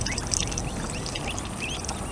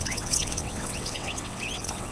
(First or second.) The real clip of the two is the first